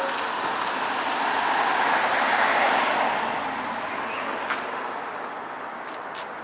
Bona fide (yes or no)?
yes